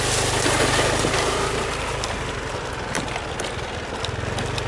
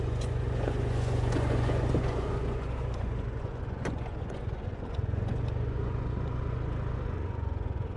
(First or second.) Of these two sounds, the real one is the first